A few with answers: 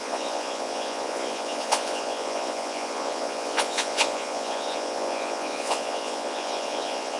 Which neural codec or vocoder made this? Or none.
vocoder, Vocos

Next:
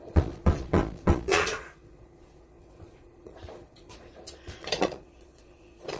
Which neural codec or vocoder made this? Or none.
vocoder, Vocos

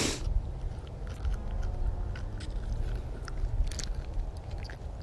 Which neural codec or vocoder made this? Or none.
none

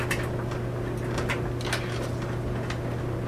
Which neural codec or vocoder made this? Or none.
none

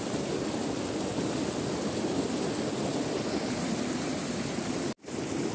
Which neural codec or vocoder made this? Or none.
none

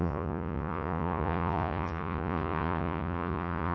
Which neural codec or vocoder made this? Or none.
vocoder, Vocos